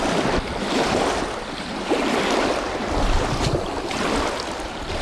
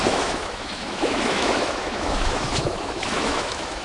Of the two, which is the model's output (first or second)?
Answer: second